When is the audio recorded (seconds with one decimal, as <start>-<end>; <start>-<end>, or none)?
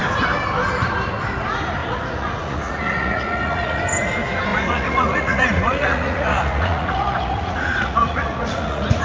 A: 0.0-1.8; 3.8-4.5